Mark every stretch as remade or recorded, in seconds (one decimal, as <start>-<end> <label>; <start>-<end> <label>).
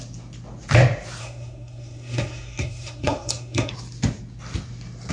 0.0-1.2 recorded; 1.2-3.7 remade; 3.7-5.1 recorded